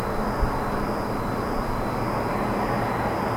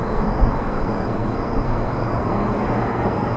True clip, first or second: first